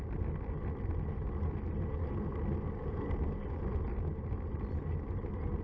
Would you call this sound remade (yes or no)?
no